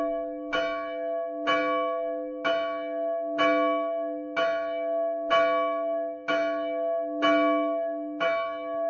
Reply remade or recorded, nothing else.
recorded